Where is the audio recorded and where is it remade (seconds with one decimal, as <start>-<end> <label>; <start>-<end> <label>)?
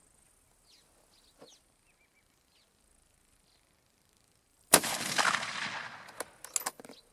0.0-4.5 recorded; 4.5-5.1 remade; 5.1-7.1 recorded